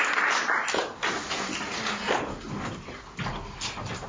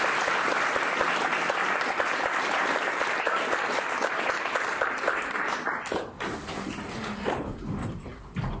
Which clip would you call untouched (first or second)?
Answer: first